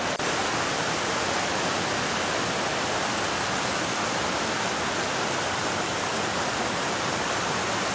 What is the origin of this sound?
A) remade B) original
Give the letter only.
B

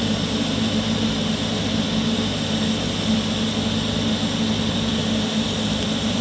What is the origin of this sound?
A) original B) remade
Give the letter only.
A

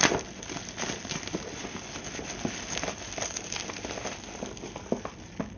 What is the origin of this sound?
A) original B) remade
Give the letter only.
A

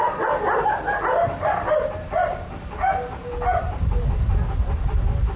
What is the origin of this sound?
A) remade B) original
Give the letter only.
B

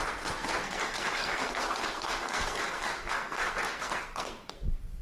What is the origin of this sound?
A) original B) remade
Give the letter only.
B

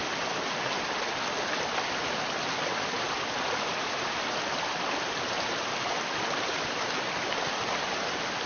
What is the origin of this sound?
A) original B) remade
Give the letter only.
A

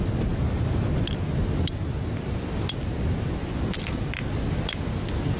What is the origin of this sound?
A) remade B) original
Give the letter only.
B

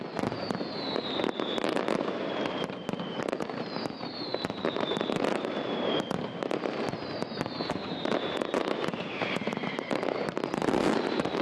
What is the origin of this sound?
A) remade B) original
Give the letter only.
A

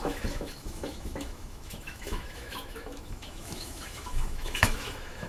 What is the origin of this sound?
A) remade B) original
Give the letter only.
A